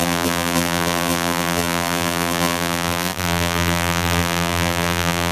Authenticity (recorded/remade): remade